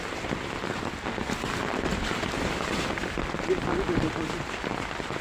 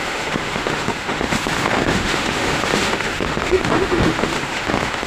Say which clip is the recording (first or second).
first